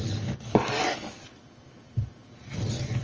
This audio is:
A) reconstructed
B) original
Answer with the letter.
B